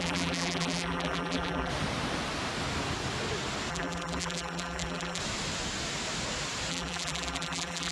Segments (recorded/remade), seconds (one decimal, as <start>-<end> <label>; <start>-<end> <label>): 0.0-1.7 remade; 1.7-3.7 recorded; 3.7-5.2 remade; 5.2-6.7 recorded; 6.7-7.9 remade